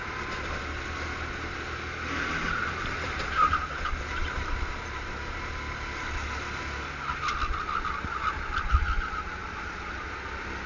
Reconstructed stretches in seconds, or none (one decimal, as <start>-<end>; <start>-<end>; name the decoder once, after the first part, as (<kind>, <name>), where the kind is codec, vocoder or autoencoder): 4.2-5.5 (vocoder, BigVGAN v2); 9.4-9.9